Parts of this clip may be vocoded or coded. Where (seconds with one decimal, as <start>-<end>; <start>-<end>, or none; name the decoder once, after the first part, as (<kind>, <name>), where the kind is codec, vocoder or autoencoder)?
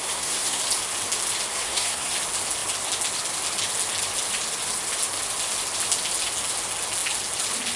0.0-0.6 (codec, SNAC); 1.5-2.1